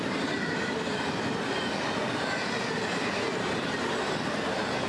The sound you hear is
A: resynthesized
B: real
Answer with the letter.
B